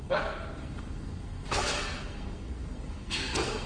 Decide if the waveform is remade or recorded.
remade